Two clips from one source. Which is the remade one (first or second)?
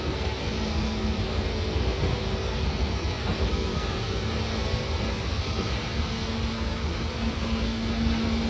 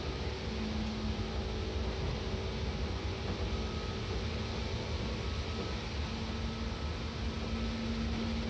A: first